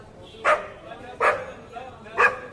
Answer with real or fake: real